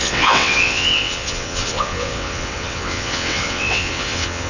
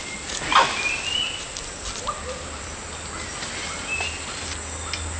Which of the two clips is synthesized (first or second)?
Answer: first